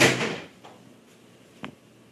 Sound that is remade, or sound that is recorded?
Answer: remade